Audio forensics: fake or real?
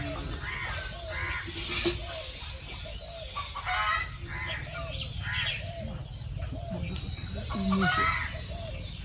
real